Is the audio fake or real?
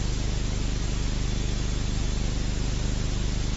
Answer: real